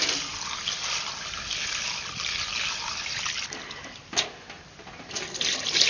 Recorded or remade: recorded